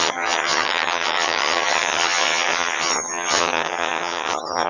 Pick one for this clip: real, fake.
fake